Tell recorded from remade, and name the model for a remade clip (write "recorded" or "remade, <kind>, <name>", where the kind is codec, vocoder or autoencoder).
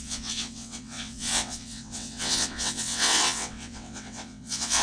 remade, vocoder, WaveNeXt